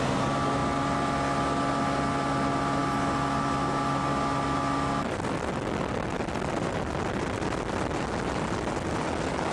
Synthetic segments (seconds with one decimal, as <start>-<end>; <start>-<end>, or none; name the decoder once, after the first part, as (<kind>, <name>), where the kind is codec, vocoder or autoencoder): none